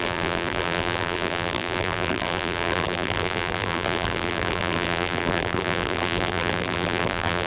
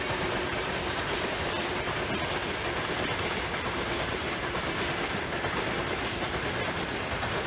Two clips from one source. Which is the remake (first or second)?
first